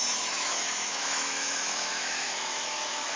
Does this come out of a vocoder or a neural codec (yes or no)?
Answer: yes